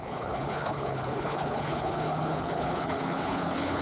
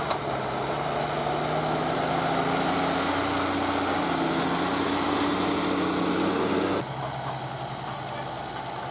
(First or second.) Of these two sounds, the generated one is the first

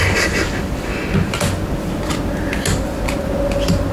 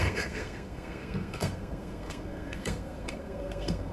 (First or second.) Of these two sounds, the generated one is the second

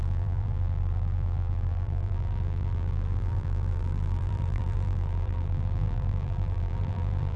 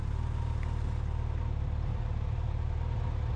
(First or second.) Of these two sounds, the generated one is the first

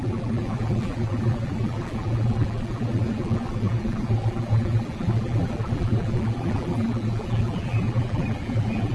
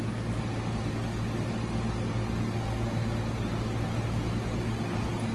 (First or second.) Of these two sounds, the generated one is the first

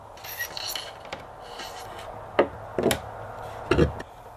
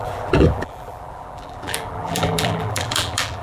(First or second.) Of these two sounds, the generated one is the second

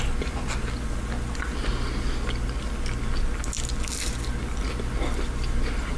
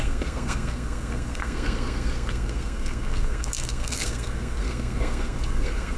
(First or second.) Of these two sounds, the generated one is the second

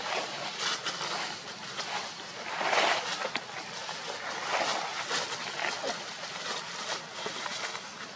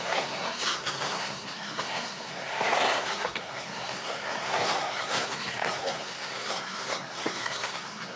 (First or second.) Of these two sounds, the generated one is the second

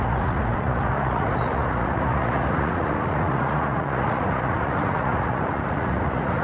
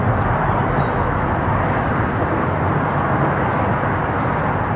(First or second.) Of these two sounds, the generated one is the first